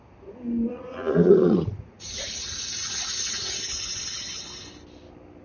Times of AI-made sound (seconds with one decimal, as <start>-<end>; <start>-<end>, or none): 0.7-3.5